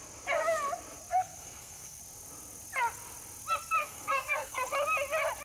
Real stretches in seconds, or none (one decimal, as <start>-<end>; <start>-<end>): 0.0-1.1; 2.0-3.8; 4.6-5.4